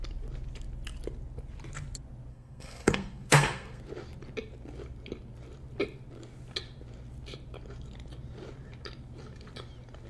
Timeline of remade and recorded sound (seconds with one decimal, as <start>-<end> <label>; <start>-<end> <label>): 0.0-2.3 recorded; 2.3-3.8 remade; 3.8-10.1 recorded